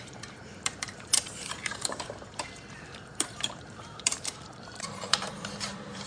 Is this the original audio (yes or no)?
no